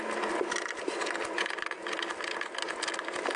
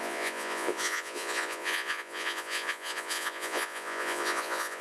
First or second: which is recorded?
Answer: first